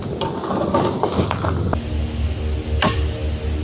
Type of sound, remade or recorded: recorded